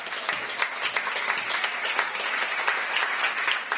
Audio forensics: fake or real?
real